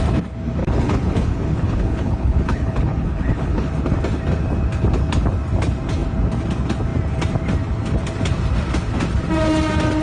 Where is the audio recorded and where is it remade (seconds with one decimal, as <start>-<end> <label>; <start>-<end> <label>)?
0.0-0.6 recorded; 0.6-3.7 remade; 3.7-10.0 recorded